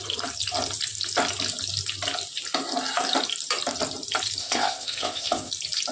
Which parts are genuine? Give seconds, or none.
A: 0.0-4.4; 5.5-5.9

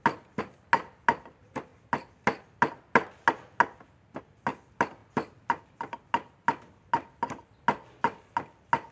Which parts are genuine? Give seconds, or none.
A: 0.0-8.9

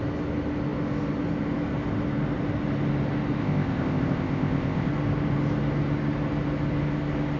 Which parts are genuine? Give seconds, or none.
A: 0.0-3.4; 4.9-7.4

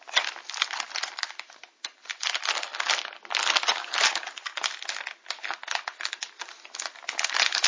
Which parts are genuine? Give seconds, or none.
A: 0.0-7.7

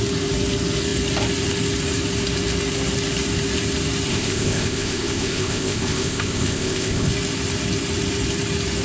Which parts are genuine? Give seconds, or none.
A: 0.0-4.1; 7.1-8.8

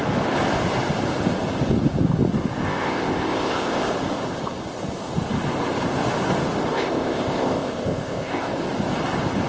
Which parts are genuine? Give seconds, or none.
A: 0.0-2.6; 3.9-6.7; 8.5-9.5